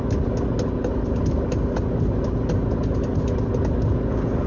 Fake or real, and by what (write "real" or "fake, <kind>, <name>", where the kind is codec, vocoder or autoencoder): real